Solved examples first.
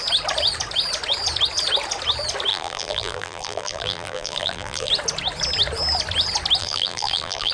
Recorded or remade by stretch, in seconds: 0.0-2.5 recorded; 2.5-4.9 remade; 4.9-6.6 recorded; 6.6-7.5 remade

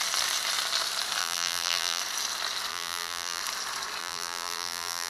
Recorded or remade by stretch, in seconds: 0.0-1.2 recorded; 1.2-2.0 remade; 2.0-2.7 recorded; 2.7-3.4 remade; 3.4-4.0 recorded; 4.0-5.1 remade

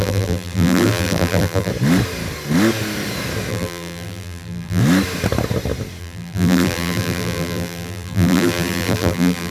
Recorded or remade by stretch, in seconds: 0.0-1.7 remade; 1.7-3.5 recorded; 3.5-4.8 remade; 4.8-6.0 recorded; 6.0-9.5 remade

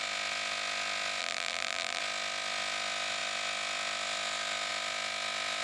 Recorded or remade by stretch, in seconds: 0.0-1.2 recorded; 1.2-2.0 remade; 2.0-5.6 recorded

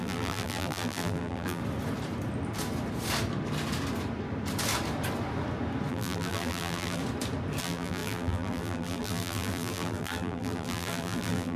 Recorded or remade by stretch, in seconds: 0.0-1.6 remade; 1.6-5.9 recorded; 5.9-7.0 remade; 7.0-7.6 recorded; 7.6-11.6 remade

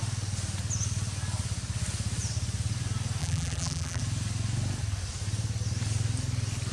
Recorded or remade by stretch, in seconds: 0.0-3.2 recorded; 3.2-4.0 remade; 4.0-6.7 recorded

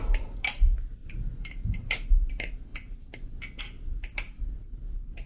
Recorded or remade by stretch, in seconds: 0.0-1.0 recorded; 1.0-2.1 remade; 2.1-5.3 recorded